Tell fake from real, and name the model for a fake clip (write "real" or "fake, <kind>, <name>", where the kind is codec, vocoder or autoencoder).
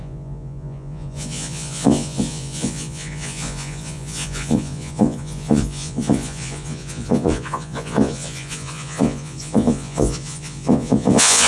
fake, vocoder, Vocos